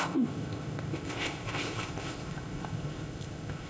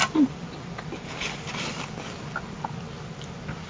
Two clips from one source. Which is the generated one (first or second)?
first